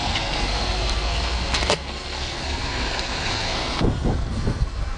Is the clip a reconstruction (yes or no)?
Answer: yes